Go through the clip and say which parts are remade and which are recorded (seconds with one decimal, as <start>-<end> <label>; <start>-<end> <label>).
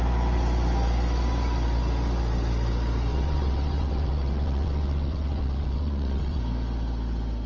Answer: 0.0-3.1 recorded; 3.1-6.4 remade; 6.4-7.5 recorded